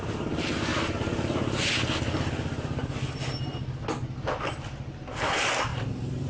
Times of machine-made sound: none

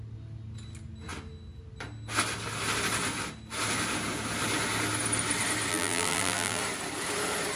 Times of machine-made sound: 5.7-6.6 (vocoder, BigVGAN v2)

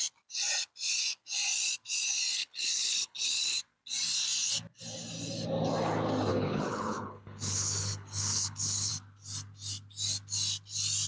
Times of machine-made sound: 2.4-3.6 (codec, HILCodec); 6.3-8.9

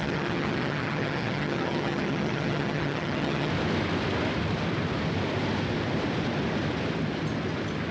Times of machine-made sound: 0.0-3.5 (vocoder, HiFi-GAN)

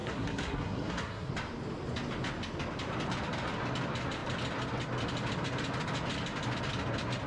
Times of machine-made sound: 0.0-1.3 (codec, SNAC)